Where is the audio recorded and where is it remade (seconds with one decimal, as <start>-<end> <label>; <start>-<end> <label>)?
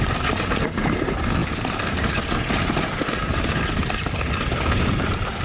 0.0-5.4 recorded